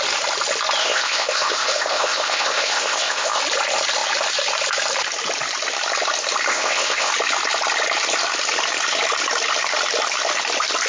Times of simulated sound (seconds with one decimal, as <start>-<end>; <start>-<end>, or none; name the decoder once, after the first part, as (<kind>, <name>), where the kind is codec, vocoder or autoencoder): 0.8-3.4 (codec, ZipCodec); 6.5-7.1